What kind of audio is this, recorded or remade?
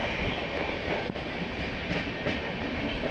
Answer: recorded